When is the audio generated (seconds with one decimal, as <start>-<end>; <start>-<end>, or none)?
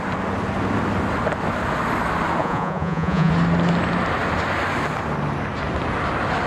2.4-3.3